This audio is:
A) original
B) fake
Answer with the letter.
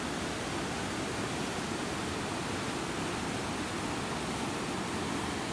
A